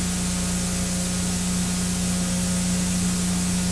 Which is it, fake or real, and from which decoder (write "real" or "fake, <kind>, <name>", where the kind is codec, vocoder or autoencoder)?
real